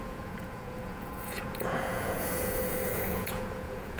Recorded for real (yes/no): no